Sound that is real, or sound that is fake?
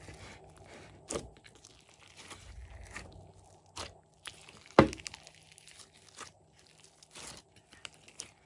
real